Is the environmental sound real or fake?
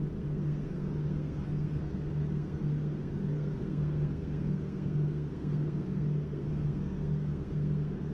fake